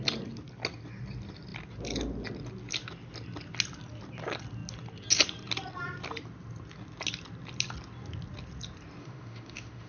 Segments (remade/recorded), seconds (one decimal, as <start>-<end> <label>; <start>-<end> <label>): 0.0-9.0 recorded; 9.0-9.9 remade